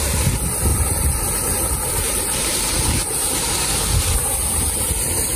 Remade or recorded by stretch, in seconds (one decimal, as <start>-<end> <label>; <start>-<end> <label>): 0.0-0.7 recorded; 0.7-3.5 remade; 3.5-4.2 recorded; 4.2-5.0 remade; 5.0-5.4 recorded